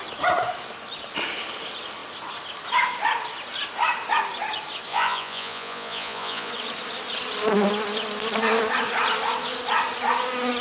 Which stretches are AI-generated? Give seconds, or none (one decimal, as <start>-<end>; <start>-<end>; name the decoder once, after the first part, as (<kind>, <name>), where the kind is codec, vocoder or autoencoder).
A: 4.9-6.5 (vocoder, Vocos)